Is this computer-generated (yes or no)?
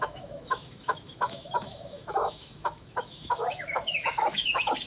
yes